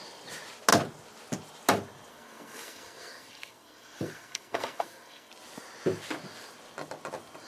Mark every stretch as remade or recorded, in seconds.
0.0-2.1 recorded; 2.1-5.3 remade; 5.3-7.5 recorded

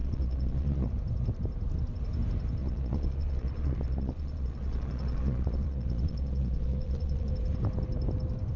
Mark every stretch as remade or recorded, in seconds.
0.0-0.9 remade; 0.9-2.6 recorded; 2.6-7.3 remade; 7.3-8.6 recorded

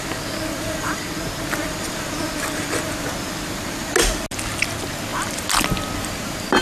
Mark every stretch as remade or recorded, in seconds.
0.0-6.6 recorded

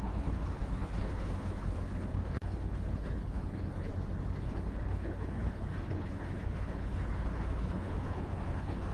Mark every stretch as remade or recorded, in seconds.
0.0-3.9 remade; 3.9-4.4 recorded; 4.4-8.9 remade

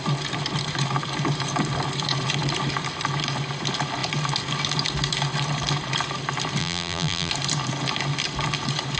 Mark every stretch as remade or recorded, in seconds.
0.0-6.6 recorded; 6.6-7.3 remade; 7.3-9.0 recorded

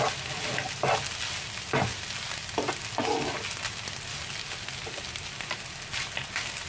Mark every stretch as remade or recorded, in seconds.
0.0-6.7 recorded